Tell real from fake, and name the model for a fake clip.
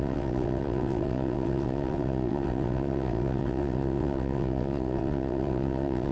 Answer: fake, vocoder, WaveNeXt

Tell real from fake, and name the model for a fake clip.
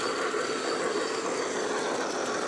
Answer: real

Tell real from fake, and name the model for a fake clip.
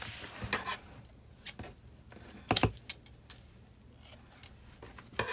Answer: real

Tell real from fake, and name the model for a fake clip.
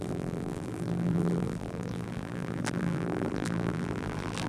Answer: fake, vocoder, BigVGAN v2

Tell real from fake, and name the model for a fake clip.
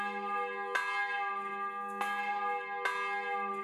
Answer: real